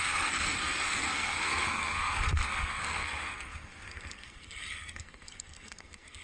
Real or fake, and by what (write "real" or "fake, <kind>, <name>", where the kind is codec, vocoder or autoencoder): fake, codec, SNAC